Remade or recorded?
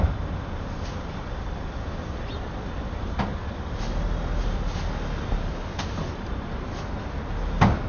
recorded